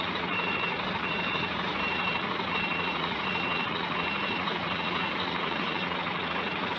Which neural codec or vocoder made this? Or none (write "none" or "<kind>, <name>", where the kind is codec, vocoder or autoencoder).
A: vocoder, Vocos